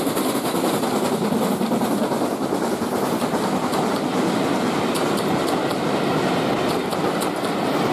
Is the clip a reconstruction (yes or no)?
no